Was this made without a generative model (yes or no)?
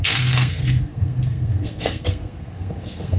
no